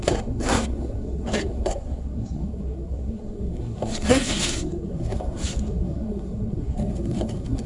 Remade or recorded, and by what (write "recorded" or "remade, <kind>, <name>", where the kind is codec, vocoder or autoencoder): remade, codec, SNAC